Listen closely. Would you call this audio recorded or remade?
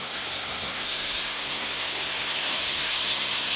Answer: remade